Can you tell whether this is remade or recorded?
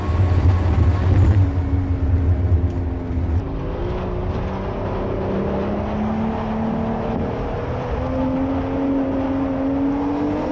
recorded